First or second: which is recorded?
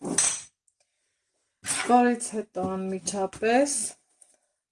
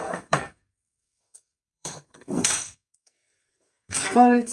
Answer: first